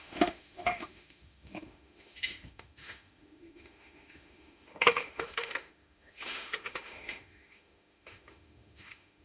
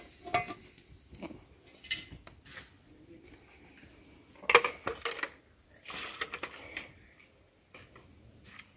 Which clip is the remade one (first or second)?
first